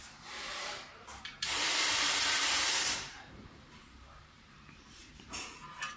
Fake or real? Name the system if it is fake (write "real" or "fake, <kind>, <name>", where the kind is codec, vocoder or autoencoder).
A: fake, vocoder, BigVGAN v2